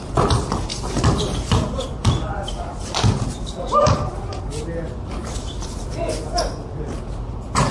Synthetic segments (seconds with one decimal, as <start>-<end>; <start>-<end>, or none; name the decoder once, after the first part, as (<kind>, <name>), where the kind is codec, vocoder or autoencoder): 0.7-4.1 (vocoder, BigVGAN v2); 5.2-5.9